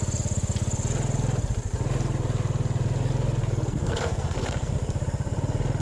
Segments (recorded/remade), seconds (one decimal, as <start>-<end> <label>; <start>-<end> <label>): 0.0-3.4 recorded; 3.4-4.7 remade; 4.7-5.8 recorded